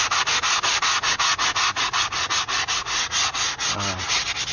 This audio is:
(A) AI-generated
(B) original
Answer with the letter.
B